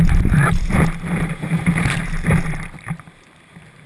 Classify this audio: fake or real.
fake